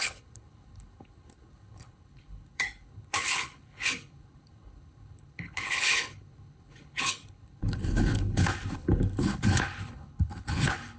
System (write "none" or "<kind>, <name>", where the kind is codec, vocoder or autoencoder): codec, HILCodec